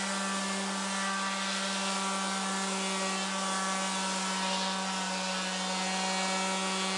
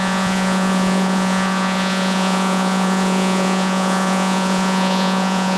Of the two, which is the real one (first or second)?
first